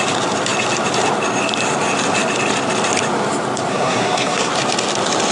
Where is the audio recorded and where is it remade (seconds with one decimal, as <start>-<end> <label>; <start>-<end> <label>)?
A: 0.0-3.7 recorded; 3.7-4.5 remade; 4.5-5.3 recorded